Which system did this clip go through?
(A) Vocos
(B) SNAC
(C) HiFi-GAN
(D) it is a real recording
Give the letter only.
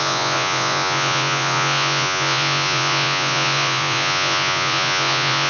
A